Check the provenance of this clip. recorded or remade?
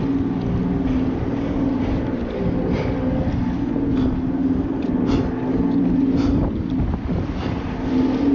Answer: recorded